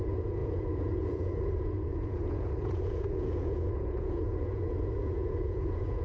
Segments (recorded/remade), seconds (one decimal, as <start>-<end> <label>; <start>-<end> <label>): 0.0-6.0 remade